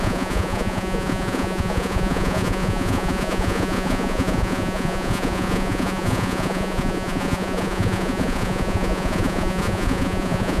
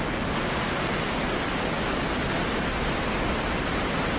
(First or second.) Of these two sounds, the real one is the second